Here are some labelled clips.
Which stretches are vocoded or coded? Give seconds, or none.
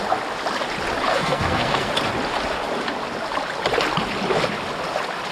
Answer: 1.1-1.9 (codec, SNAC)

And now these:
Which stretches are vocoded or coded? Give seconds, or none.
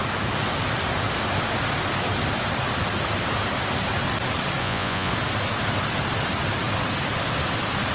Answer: 4.6-5.1 (vocoder, Vocos)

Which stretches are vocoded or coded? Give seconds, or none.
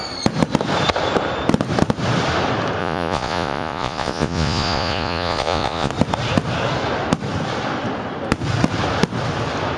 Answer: 2.8-5.9 (vocoder, Vocos)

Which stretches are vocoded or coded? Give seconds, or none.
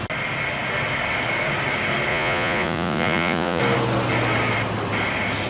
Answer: 2.1-3.6 (vocoder, Vocos)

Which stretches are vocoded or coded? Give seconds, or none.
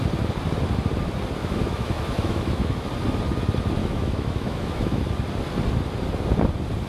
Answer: 1.4-2.8 (autoencoder, DAC-VAE); 3.8-5.0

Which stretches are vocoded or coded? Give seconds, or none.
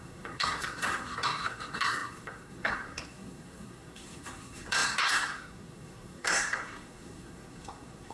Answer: 0.0-8.1 (codec, SNAC)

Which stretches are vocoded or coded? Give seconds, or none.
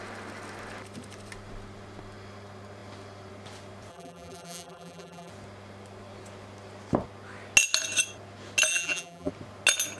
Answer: 3.9-5.3 (vocoder, BigVGAN v2); 8.7-9.3